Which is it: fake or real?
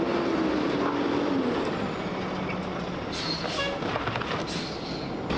real